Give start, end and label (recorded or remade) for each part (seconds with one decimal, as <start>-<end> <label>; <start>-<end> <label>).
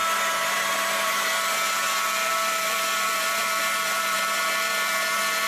0.0-2.3 recorded; 2.3-5.5 remade